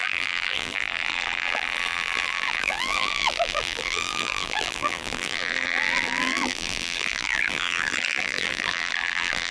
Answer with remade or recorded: remade